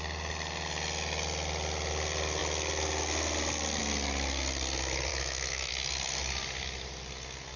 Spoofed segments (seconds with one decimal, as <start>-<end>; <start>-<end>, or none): 5.1-5.7

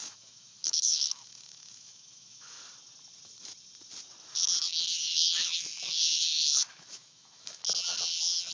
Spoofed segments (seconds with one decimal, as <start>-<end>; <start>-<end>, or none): 0.0-2.6; 4.6-7.6

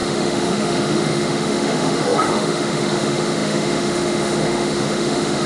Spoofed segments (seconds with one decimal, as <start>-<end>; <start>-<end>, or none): 0.0-5.5

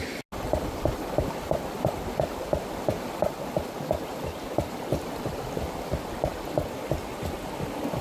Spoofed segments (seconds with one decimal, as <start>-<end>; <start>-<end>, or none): none

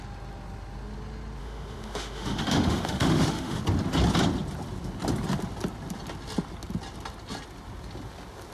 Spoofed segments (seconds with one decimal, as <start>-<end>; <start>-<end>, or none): 1.4-3.6

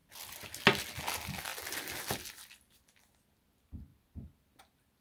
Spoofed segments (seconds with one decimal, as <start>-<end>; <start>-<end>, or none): none

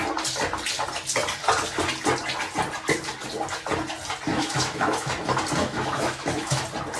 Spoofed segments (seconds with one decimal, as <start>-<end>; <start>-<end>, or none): 4.3-5.1; 5.6-6.6

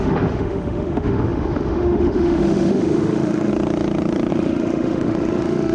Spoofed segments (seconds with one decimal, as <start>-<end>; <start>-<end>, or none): 0.0-3.5; 4.3-5.7